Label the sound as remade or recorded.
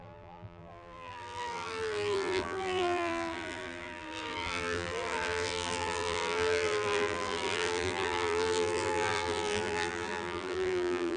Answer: remade